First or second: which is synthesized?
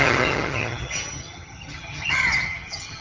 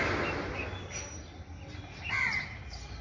first